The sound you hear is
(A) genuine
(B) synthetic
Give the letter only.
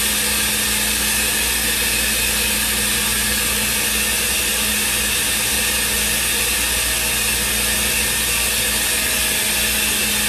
A